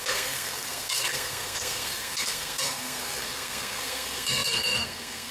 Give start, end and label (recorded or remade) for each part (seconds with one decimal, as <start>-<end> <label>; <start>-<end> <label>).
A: 0.0-5.3 remade